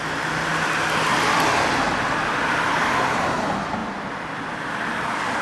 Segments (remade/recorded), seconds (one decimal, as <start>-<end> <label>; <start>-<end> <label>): 0.0-5.4 recorded